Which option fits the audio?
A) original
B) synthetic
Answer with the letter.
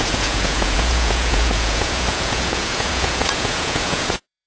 B